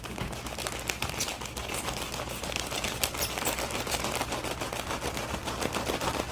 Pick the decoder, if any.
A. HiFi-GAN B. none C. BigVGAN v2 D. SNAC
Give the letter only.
B